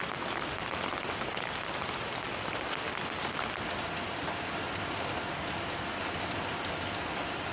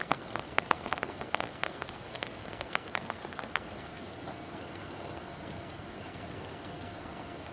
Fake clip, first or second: second